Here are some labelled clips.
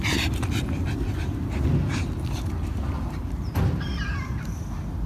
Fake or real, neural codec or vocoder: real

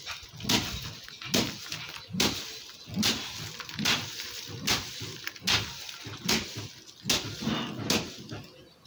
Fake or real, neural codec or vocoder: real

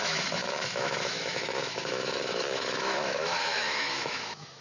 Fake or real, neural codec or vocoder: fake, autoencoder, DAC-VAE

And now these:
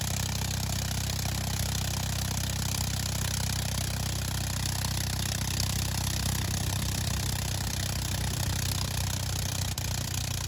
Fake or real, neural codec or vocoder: real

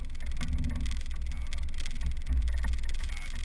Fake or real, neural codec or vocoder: real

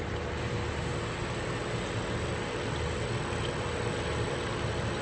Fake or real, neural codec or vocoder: real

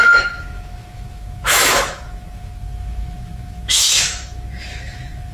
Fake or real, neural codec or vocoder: fake, autoencoder, DAC-VAE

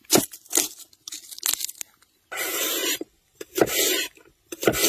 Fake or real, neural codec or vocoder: real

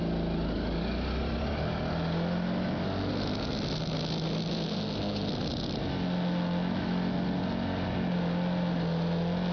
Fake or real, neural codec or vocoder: real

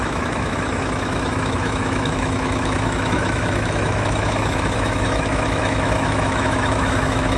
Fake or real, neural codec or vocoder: fake, autoencoder, DAC-VAE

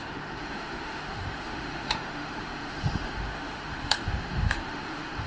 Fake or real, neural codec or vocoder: fake, autoencoder, DAC-VAE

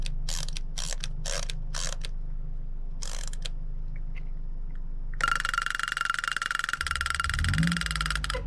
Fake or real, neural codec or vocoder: real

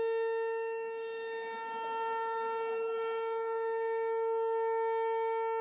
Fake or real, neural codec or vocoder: fake, autoencoder, DAC-VAE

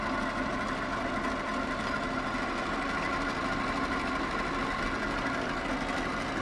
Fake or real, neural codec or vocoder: real